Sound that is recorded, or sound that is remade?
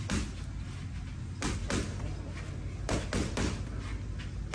recorded